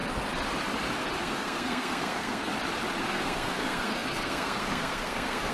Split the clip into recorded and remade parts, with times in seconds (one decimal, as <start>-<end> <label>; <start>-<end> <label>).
0.0-1.2 recorded; 1.2-2.5 remade; 2.5-3.0 recorded; 3.0-5.5 remade